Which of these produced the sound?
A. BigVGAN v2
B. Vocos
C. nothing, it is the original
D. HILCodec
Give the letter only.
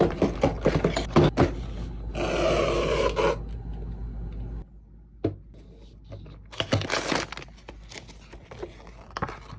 C